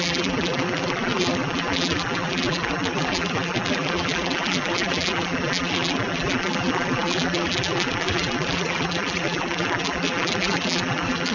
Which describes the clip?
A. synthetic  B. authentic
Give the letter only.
A